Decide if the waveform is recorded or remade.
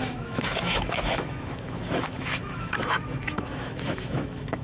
remade